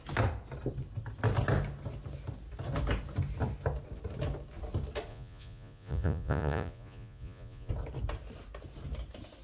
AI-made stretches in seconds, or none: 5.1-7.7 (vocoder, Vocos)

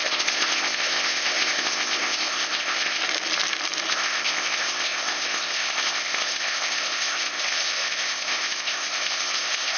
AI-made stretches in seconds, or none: 0.0-3.0 (codec, ZipCodec); 3.9-9.8

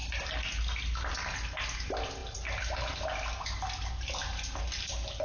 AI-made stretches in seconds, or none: none

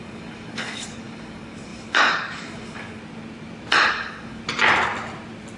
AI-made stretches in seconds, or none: 0.0-3.0 (codec, DAC); 3.9-4.4

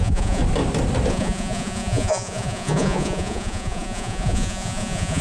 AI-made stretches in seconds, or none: 0.0-0.4 (vocoder, Vocos); 1.1-5.2

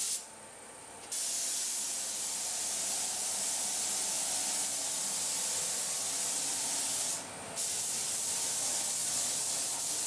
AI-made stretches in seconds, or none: none

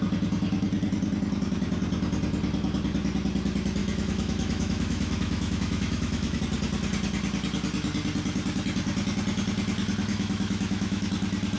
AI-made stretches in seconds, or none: 3.8-6.4 (autoencoder, DAC-VAE); 10.1-11.1